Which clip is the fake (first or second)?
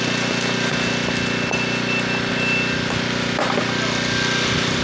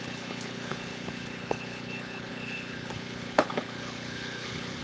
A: second